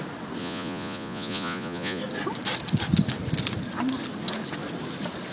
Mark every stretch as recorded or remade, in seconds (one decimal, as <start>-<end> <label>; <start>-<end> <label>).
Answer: 0.0-0.4 recorded; 0.4-2.0 remade; 2.0-5.3 recorded